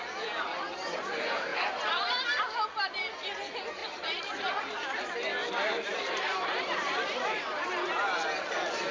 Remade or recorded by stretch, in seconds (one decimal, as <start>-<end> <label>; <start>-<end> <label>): 0.0-1.5 recorded; 1.5-3.1 remade; 3.1-3.8 recorded; 3.8-4.7 remade; 4.7-5.4 recorded; 5.4-7.4 remade; 7.4-8.9 recorded